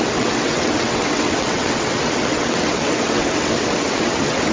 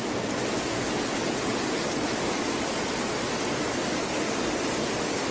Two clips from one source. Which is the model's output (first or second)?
first